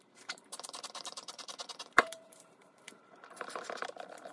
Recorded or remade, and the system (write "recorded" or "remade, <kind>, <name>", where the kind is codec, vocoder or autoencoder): remade, vocoder, BigVGAN v2